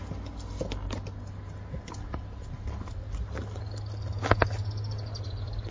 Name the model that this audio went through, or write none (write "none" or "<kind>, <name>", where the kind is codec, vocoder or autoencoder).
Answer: none